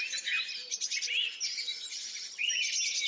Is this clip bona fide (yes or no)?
yes